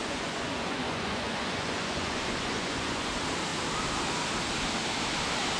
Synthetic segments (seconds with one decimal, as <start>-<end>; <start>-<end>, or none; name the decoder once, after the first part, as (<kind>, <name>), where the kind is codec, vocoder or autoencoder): 0.0-3.1 (vocoder, Vocos)